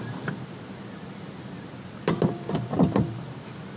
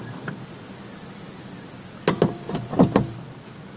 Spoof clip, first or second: first